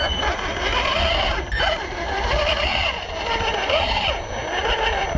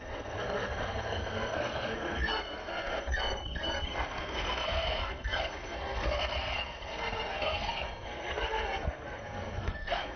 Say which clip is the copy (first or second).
second